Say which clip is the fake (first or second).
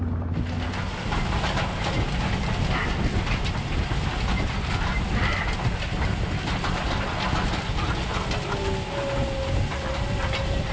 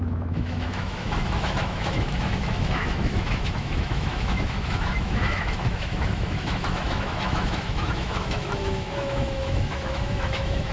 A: second